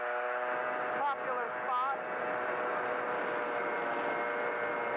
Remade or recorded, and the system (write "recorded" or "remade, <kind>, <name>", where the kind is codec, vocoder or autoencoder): recorded